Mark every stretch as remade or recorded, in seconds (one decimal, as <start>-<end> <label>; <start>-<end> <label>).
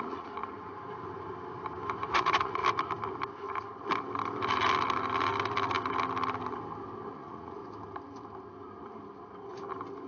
0.0-0.4 remade; 0.4-2.1 recorded; 2.1-2.6 remade; 2.6-7.1 recorded; 7.1-7.6 remade; 7.6-10.1 recorded